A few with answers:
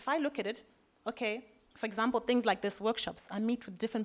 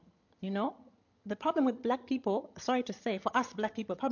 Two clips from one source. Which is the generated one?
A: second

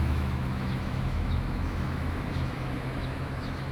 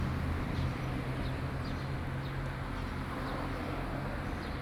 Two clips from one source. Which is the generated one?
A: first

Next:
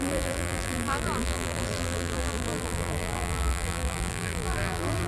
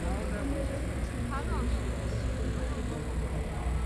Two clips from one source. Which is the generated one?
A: first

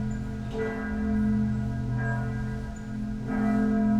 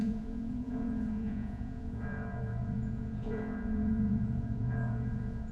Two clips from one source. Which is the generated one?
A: second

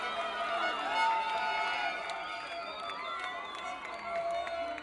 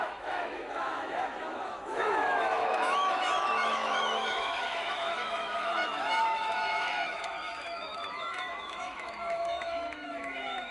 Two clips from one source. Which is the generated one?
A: second